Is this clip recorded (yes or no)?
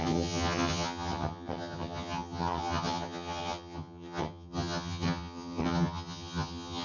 no